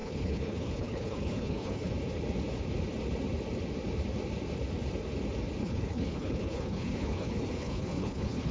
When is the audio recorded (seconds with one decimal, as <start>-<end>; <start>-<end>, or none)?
1.9-5.6

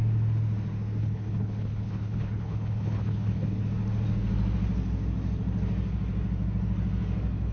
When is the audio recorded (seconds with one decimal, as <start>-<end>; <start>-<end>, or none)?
0.0-1.0; 3.6-7.5

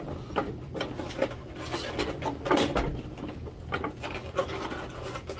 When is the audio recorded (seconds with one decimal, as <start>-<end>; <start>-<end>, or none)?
0.0-5.4

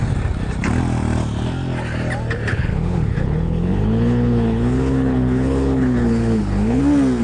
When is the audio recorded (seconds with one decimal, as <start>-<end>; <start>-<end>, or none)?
0.0-2.5; 6.8-7.2

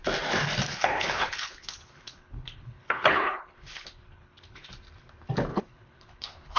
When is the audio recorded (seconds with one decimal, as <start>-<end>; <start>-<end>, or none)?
0.0-0.7; 4.7-5.5

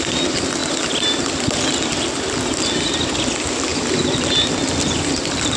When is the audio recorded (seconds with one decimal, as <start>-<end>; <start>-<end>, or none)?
0.0-5.6

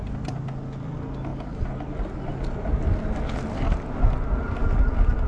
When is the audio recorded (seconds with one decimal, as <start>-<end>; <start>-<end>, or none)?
0.0-5.3